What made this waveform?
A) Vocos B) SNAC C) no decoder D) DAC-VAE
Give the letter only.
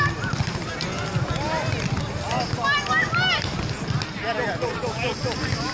C